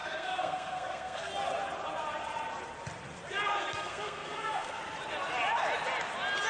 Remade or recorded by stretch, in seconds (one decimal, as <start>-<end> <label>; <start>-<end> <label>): 0.0-1.3 remade; 1.3-3.5 recorded; 3.5-4.8 remade; 4.8-6.5 recorded